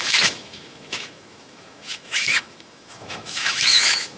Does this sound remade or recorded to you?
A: remade